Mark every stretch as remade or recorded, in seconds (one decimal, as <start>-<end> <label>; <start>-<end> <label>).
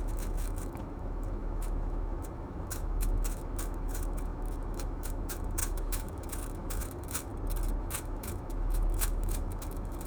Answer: 0.0-7.3 remade; 7.3-7.8 recorded; 7.8-10.1 remade